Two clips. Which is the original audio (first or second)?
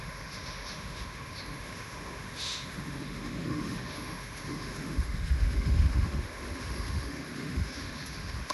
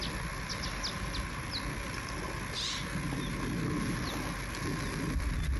second